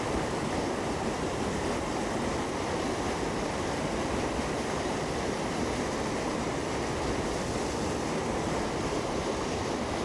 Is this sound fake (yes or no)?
no